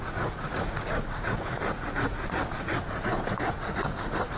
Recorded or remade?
remade